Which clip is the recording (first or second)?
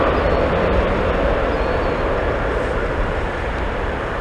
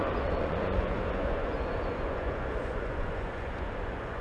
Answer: first